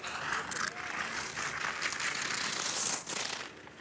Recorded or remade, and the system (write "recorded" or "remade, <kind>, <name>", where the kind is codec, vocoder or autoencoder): recorded